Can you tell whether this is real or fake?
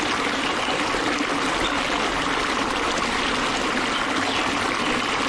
real